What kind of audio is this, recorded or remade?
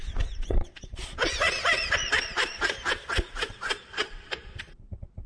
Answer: remade